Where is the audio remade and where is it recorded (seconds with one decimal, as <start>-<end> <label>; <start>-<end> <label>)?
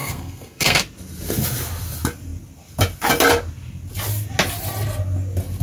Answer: 0.0-0.8 remade; 0.8-5.6 recorded